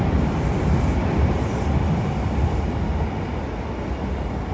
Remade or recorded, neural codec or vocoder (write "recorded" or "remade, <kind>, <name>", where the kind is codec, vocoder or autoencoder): recorded